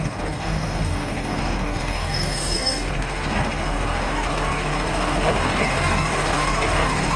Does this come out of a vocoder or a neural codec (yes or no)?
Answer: yes